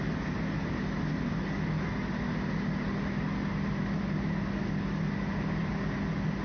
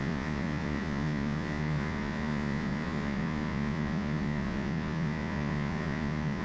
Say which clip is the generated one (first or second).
second